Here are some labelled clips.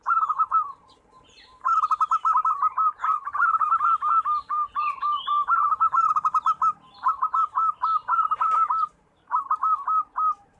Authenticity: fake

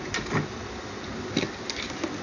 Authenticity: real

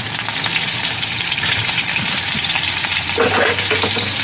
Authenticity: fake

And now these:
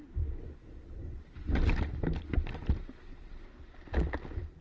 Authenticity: real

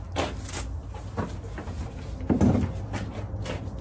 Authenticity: real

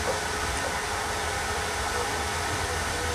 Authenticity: real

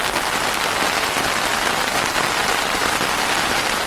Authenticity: fake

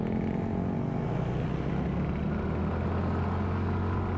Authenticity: real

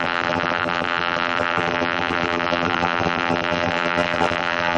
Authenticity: fake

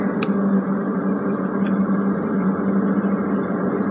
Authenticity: real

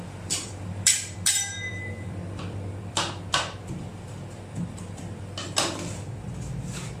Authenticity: fake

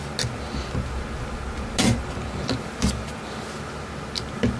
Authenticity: real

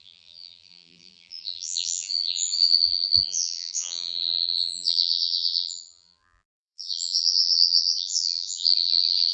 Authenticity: fake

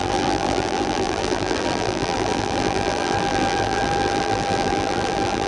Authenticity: fake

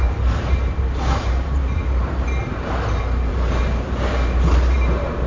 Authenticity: fake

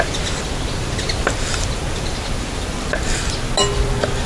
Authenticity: real